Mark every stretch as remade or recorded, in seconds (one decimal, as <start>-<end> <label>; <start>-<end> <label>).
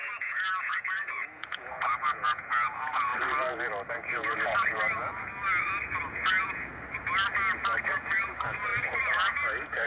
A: 0.0-3.1 remade; 3.1-3.9 recorded; 3.9-5.1 remade; 5.1-6.1 recorded; 6.1-6.7 remade; 6.7-7.8 recorded; 7.8-9.9 remade